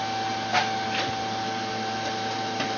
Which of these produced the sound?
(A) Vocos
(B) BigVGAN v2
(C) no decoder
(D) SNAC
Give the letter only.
C